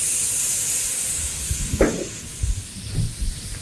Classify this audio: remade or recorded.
recorded